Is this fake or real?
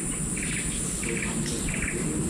fake